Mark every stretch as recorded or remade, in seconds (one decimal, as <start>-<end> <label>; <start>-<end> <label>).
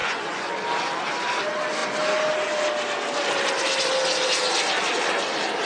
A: 0.0-0.5 remade; 0.5-5.7 recorded